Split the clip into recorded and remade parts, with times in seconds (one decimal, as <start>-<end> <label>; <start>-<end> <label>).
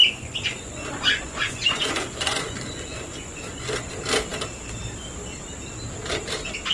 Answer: 0.0-3.9 remade; 3.9-6.7 recorded